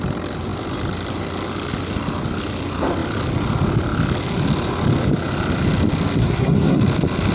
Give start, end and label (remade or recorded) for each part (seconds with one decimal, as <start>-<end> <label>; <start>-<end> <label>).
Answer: 0.0-6.2 recorded; 6.2-6.8 remade; 6.8-7.3 recorded